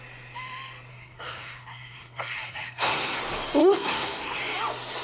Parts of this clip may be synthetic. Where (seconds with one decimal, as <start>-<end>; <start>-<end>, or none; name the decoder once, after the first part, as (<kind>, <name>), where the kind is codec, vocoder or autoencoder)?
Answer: 0.9-3.2 (codec, SNAC); 3.6-4.4